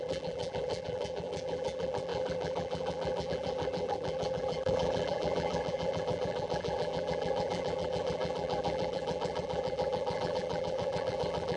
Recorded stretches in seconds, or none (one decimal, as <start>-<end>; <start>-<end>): none